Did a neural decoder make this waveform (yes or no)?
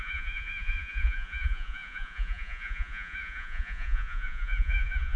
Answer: yes